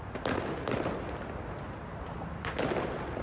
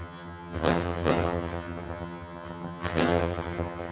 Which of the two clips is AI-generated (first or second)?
second